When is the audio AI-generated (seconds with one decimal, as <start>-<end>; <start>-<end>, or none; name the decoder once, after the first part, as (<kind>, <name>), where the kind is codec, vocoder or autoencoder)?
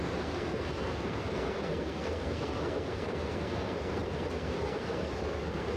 0.0-5.8 (codec, SNAC)